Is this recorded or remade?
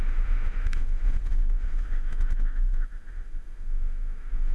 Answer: remade